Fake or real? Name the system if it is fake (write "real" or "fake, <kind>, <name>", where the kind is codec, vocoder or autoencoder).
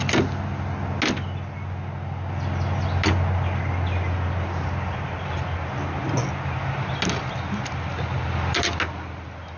real